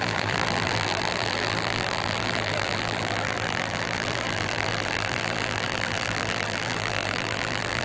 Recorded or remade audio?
remade